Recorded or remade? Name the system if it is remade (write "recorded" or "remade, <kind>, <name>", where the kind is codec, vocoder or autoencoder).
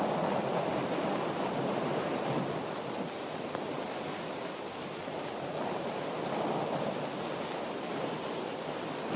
recorded